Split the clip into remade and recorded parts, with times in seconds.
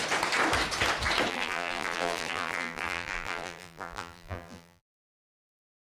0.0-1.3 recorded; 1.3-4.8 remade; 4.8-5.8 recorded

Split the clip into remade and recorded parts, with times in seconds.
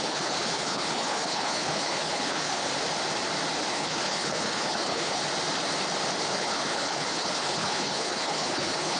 0.0-2.7 remade; 2.7-3.7 recorded; 3.7-5.2 remade; 5.2-6.3 recorded; 6.3-9.0 remade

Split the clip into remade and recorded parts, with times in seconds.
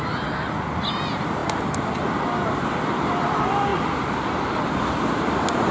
0.0-1.4 remade; 1.4-2.5 recorded; 2.5-3.7 remade; 3.7-4.7 recorded; 4.7-5.7 remade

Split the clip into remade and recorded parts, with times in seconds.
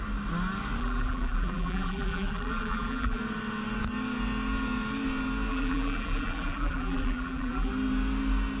0.0-0.8 recorded; 0.8-3.2 remade; 3.2-5.5 recorded; 5.5-7.7 remade; 7.7-8.6 recorded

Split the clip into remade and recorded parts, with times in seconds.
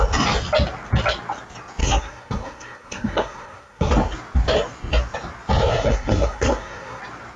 0.0-1.8 recorded; 1.8-3.9 remade; 3.9-5.7 recorded; 5.7-7.0 remade; 7.0-7.4 recorded